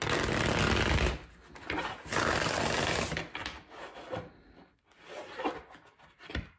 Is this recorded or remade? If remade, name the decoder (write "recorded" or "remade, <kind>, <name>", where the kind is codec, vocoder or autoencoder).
recorded